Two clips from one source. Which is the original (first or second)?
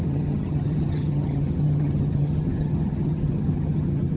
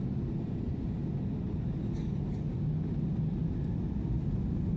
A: second